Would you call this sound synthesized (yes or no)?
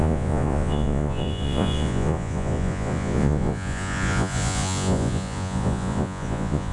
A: yes